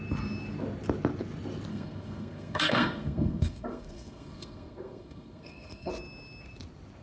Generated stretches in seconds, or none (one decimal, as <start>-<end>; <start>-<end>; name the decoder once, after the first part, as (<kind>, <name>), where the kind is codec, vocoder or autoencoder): 1.7-5.9 (codec, SNAC)